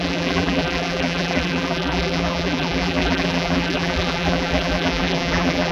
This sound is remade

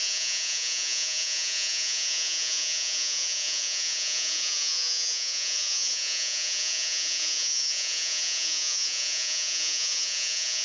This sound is remade